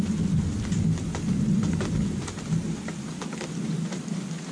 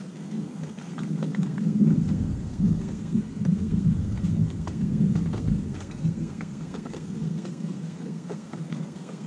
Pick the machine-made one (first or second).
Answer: second